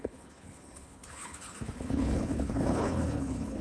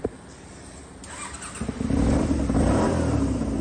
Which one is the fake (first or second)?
first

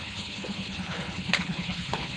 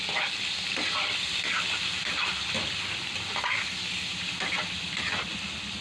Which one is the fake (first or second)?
first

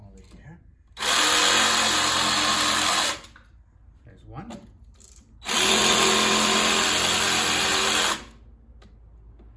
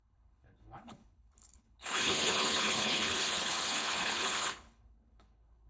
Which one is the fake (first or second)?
second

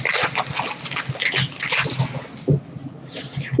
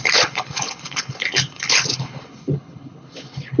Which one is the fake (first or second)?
second